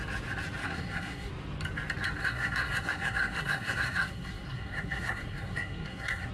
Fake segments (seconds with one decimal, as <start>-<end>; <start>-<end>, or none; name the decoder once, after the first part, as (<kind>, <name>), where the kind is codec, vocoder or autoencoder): 0.6-1.3 (codec, SNAC); 2.2-6.3